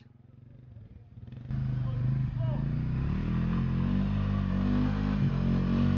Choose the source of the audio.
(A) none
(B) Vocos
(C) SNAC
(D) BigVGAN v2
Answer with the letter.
A